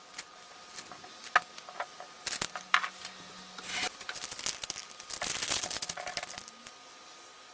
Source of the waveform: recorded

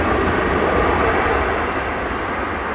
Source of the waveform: recorded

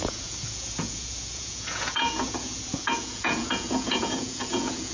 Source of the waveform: remade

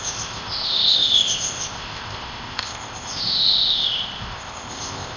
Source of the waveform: remade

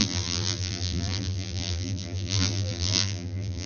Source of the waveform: remade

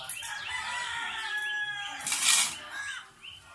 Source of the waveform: recorded